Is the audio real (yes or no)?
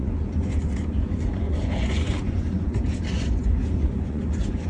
no